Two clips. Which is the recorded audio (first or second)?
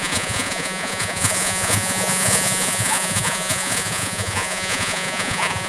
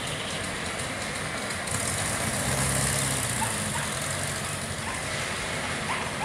second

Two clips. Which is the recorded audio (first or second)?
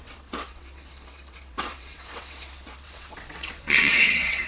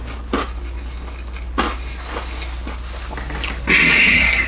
second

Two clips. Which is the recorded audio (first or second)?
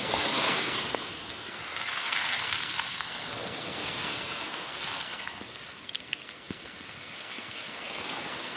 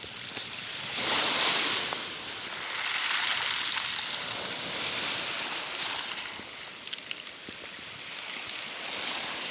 second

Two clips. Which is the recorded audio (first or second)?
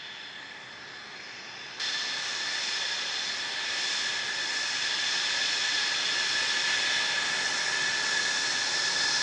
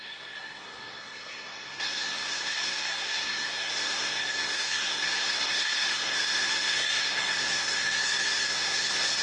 first